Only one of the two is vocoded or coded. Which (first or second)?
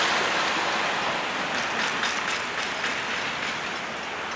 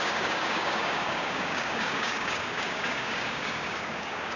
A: second